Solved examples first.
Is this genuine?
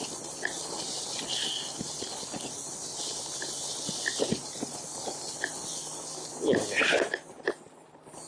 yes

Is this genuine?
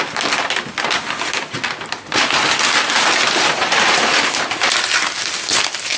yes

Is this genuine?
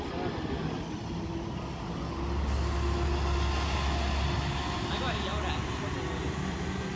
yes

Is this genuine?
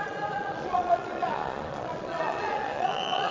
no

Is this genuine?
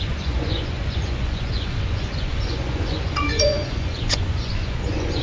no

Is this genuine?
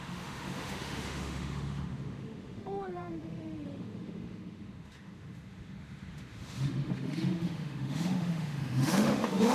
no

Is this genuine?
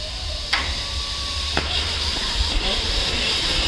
yes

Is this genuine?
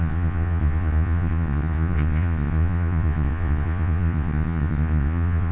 no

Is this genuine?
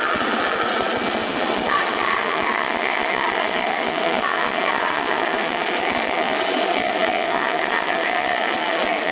no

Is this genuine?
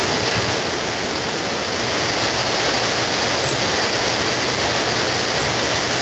yes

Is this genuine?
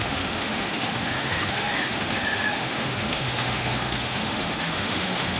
no